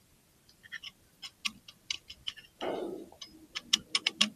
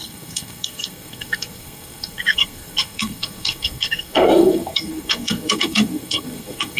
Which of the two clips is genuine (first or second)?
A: first